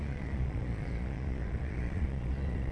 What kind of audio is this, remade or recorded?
remade